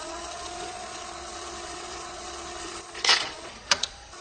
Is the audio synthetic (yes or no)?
yes